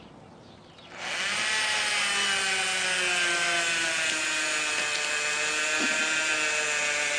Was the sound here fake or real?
real